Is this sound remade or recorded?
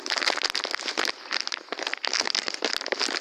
recorded